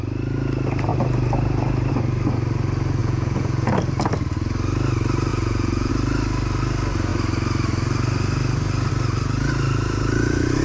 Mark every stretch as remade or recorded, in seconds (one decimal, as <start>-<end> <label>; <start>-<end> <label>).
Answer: 0.0-3.0 recorded; 3.0-3.7 remade; 3.7-5.3 recorded; 5.3-5.9 remade; 5.9-10.6 recorded